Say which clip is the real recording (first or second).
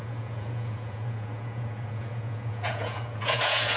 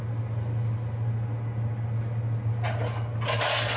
second